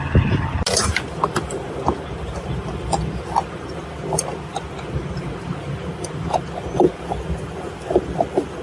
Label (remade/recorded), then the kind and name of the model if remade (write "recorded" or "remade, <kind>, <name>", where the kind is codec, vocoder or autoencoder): recorded